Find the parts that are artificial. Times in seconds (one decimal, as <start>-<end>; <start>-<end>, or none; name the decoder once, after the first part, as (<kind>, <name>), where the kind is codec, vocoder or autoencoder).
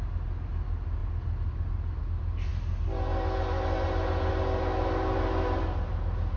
none